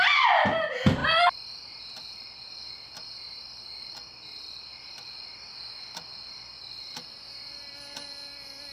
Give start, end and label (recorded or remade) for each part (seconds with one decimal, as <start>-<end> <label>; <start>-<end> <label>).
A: 0.0-4.7 recorded; 4.7-5.3 remade; 5.3-8.7 recorded